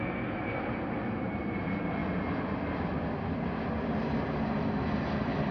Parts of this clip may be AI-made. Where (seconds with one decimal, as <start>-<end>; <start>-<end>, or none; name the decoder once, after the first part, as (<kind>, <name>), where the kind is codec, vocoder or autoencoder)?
0.0-2.0 (vocoder, BigVGAN v2)